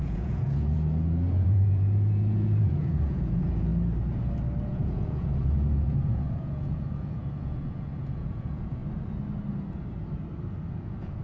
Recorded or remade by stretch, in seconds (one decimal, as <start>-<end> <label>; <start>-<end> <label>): 0.0-3.7 remade; 3.7-4.6 recorded; 4.6-8.8 remade; 8.8-10.7 recorded; 10.7-11.2 remade